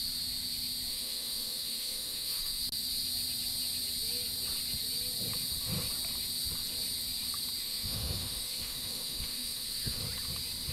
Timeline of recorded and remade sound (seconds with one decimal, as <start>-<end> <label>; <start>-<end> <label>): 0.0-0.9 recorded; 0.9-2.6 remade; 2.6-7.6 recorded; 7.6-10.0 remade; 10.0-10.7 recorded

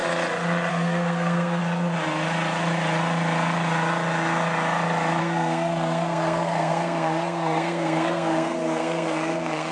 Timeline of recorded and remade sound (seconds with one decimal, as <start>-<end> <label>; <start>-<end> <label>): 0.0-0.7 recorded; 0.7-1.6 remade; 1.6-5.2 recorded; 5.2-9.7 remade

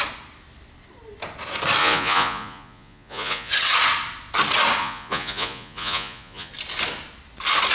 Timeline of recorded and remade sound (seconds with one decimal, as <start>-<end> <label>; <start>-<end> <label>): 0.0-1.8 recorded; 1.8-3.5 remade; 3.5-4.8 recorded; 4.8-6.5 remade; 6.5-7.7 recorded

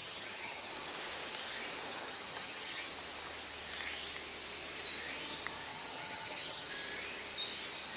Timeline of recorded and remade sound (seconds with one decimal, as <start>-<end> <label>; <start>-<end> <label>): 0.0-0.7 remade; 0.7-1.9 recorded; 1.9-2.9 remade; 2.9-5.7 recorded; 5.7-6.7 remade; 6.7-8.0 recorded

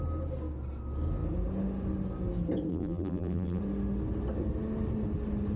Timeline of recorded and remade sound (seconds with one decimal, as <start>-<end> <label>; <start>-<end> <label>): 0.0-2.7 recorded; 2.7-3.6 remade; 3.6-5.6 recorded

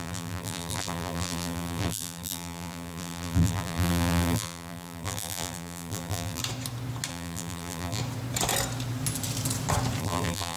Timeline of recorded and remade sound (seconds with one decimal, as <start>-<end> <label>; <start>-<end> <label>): 0.0-6.4 remade; 6.4-7.1 recorded; 7.1-8.0 remade; 8.0-10.0 recorded; 10.0-10.6 remade

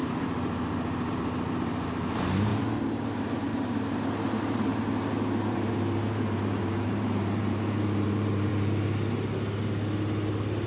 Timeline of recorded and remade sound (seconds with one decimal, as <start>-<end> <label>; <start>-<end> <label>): 0.0-1.1 recorded; 1.1-2.5 remade; 2.5-3.2 recorded; 3.2-8.5 remade; 8.5-10.7 recorded